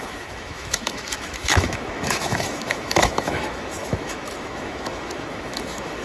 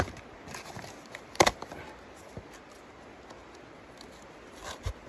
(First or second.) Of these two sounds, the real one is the second